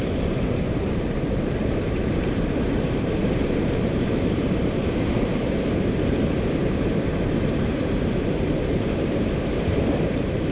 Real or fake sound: fake